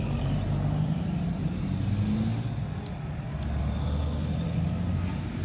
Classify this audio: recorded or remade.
recorded